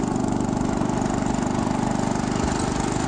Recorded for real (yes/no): yes